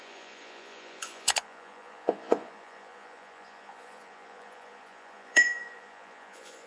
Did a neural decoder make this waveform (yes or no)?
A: yes